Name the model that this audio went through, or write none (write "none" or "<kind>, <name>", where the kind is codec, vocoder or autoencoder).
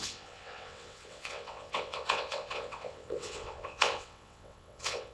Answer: vocoder, WaveNeXt